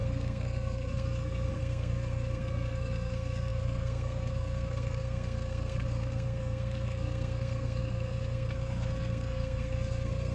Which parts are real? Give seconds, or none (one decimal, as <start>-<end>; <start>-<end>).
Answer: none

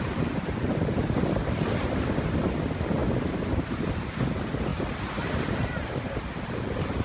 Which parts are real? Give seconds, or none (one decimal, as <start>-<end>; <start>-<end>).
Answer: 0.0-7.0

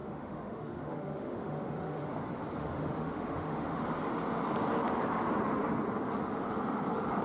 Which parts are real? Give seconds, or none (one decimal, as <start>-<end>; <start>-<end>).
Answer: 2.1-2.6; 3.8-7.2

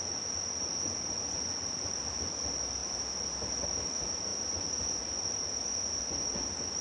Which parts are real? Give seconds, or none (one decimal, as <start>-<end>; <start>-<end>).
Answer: none

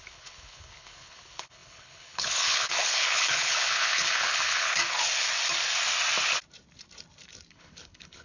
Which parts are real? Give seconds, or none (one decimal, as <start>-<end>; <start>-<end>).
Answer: 4.8-7.5

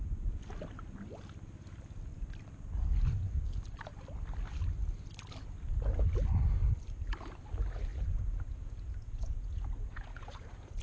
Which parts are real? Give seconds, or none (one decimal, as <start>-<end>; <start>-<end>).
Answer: 0.0-7.9